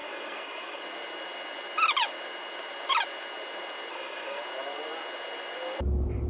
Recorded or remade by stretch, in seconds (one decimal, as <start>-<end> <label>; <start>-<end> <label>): 0.0-0.8 remade; 0.8-3.9 recorded; 3.9-4.4 remade; 4.4-6.3 recorded